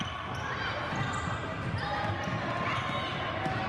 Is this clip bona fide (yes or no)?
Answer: yes